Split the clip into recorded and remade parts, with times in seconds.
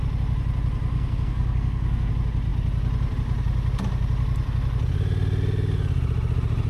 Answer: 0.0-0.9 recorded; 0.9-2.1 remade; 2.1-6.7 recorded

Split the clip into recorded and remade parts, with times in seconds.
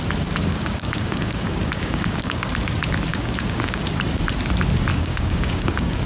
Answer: 0.0-0.5 recorded; 0.5-2.5 remade; 2.5-3.1 recorded; 3.1-3.8 remade; 3.8-4.9 recorded; 4.9-6.1 remade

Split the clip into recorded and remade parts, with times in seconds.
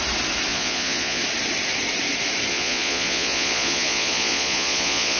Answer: 0.0-0.5 recorded; 0.5-1.2 remade; 1.2-2.5 recorded; 2.5-5.2 remade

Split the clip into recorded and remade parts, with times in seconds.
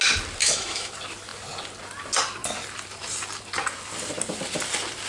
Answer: 0.0-0.4 recorded; 0.4-0.9 remade; 0.9-5.1 recorded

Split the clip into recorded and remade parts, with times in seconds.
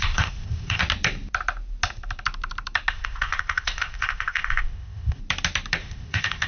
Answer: 0.0-0.8 remade; 0.8-2.9 recorded; 2.9-5.2 remade; 5.2-5.8 recorded; 5.8-6.5 remade